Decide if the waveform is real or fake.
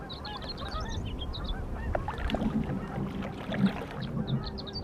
real